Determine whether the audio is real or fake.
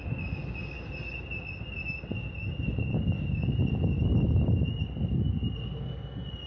real